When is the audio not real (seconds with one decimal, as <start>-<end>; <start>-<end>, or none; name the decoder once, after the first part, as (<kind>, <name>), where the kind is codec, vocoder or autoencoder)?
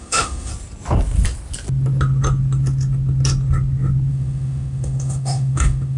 0.0-0.5 (autoencoder, DAC-VAE); 4.1-6.0